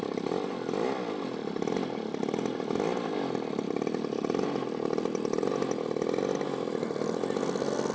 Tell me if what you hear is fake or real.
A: real